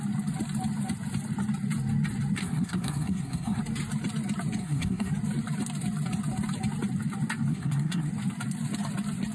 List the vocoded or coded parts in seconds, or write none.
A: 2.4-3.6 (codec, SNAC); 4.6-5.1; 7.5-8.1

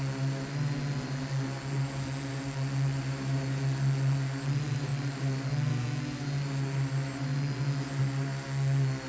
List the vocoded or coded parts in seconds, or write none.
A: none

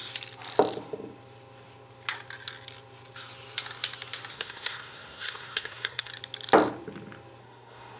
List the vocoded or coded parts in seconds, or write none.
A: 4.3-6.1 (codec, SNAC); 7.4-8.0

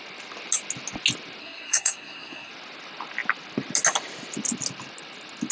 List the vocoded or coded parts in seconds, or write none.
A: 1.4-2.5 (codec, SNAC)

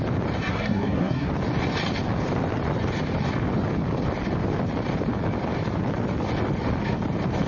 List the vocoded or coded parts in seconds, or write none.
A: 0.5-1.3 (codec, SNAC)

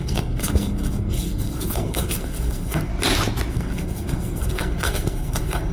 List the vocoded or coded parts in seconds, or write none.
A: 0.0-2.9 (codec, SNAC); 3.5-5.7

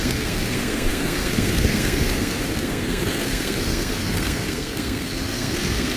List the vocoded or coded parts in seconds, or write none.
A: 0.0-6.0 (codec, SNAC)

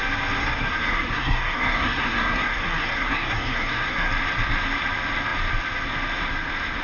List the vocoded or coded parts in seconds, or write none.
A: 0.4-4.1 (codec, SNAC)